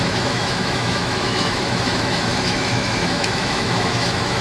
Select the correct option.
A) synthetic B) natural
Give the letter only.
A